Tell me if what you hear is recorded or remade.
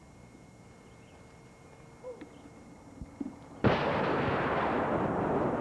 recorded